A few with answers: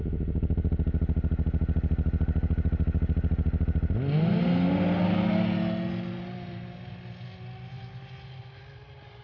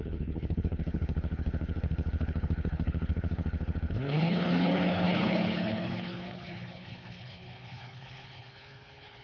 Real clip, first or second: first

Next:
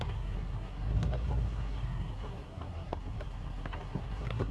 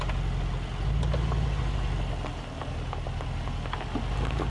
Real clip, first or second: second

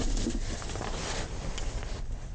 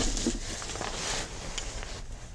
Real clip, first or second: second